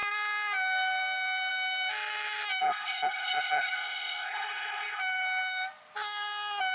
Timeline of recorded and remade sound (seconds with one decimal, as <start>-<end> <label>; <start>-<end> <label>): 0.0-2.6 recorded; 2.6-5.0 remade; 5.0-6.7 recorded